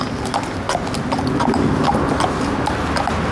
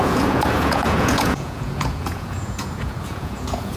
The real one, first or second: first